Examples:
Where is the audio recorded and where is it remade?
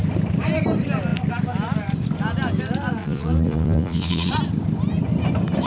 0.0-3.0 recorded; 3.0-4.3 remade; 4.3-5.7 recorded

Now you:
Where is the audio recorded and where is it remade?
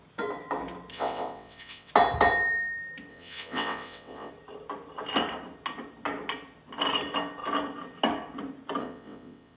0.0-0.9 recorded; 0.9-1.9 remade; 1.9-3.1 recorded; 3.1-4.3 remade; 4.3-8.8 recorded; 8.8-9.6 remade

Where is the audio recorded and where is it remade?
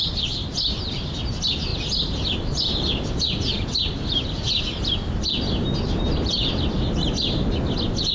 0.0-8.1 recorded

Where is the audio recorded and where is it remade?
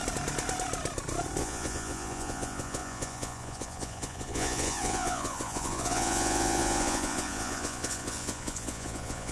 0.0-1.4 recorded; 1.4-9.3 remade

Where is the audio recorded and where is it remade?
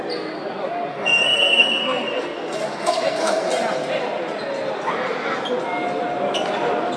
0.0-0.9 recorded; 0.9-3.5 remade; 3.5-7.0 recorded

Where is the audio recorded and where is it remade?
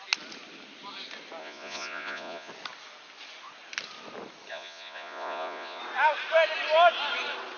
0.0-1.4 recorded; 1.4-2.5 remade; 2.5-4.5 recorded; 4.5-5.8 remade; 5.8-7.6 recorded